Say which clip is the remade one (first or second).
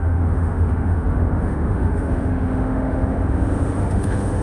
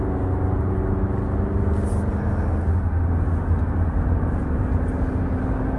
first